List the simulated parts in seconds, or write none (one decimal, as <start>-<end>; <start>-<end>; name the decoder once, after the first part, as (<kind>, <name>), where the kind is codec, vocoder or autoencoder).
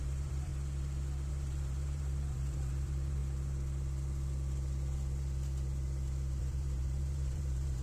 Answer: 0.0-0.5 (vocoder, BigVGAN v2); 1.3-3.2; 6.4-7.8